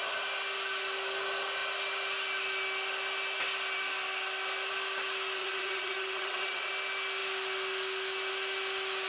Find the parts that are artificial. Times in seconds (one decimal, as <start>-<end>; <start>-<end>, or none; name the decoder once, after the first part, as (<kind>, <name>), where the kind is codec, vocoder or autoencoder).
5.4-6.7 (vocoder, WaveNeXt)